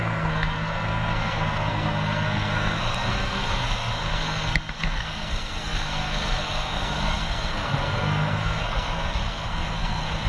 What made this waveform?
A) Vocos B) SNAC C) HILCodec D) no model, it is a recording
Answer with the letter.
B